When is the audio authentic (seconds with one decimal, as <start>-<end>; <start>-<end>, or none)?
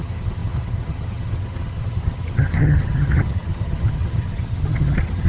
none